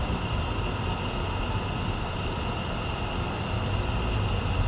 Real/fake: real